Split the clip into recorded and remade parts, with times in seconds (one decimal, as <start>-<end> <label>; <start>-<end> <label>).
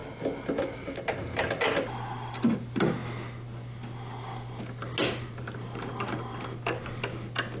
0.0-7.6 recorded